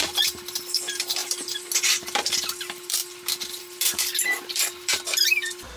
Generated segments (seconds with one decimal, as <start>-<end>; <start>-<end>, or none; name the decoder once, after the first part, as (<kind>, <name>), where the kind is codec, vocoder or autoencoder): 0.0-3.0 (vocoder, BigVGAN v2); 3.6-5.8